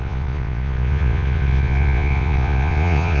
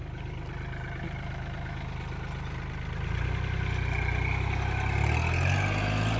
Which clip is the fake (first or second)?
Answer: first